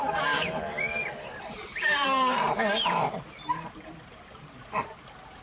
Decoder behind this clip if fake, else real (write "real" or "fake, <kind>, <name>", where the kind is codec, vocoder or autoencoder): fake, vocoder, BigVGAN v2